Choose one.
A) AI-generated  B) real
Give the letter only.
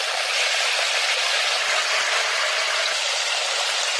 B